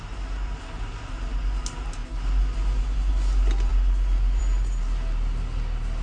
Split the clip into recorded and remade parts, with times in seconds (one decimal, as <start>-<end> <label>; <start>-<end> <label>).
0.0-6.0 recorded